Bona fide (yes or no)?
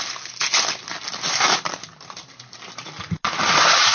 yes